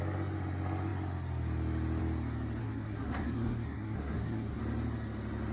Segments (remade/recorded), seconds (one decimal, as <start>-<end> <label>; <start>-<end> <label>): 0.0-2.6 recorded; 2.6-4.6 remade; 4.6-5.5 recorded